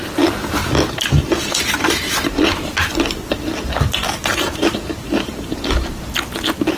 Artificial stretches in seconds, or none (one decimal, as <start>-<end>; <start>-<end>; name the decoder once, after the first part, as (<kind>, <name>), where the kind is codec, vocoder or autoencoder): none